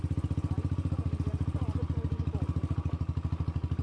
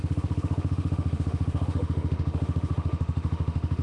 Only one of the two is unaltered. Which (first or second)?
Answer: first